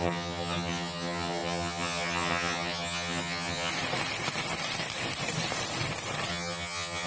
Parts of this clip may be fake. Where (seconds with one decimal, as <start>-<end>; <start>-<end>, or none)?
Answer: 0.0-3.7; 6.3-7.1

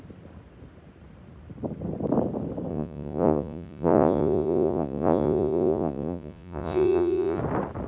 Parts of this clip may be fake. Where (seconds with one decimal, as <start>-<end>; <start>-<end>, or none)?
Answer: 2.7-7.4

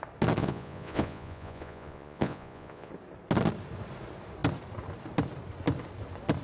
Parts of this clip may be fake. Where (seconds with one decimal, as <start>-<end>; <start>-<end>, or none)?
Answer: 0.4-2.9

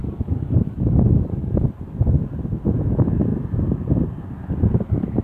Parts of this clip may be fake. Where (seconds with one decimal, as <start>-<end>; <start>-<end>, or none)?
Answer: 0.0-1.7

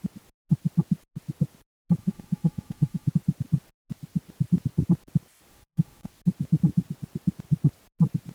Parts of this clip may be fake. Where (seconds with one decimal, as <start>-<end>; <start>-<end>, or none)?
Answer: 2.0-3.1; 5.5-6.1

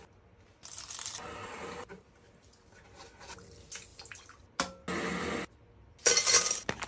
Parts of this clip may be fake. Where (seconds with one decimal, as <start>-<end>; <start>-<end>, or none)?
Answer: none